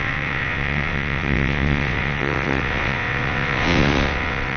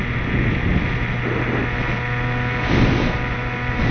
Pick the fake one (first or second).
first